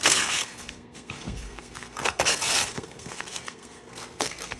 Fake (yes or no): yes